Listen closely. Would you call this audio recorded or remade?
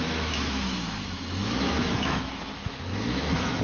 remade